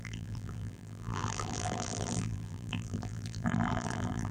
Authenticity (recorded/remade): remade